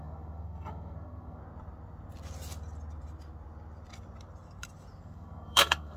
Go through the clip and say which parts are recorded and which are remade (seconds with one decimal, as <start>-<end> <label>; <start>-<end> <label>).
0.0-1.4 remade; 1.4-5.0 recorded; 5.0-6.0 remade